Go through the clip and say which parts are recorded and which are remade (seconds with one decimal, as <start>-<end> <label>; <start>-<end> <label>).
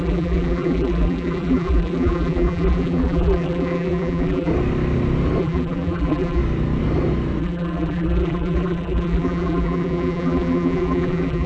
0.0-4.5 remade; 4.5-5.4 recorded; 5.4-6.4 remade; 6.4-7.4 recorded; 7.4-11.5 remade